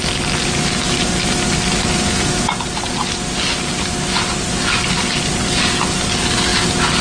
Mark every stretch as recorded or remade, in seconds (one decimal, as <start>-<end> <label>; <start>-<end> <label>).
0.0-7.0 recorded